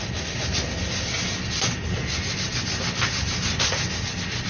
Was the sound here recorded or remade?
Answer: recorded